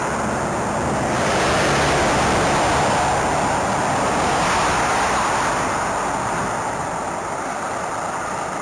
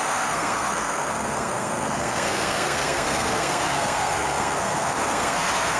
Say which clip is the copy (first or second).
second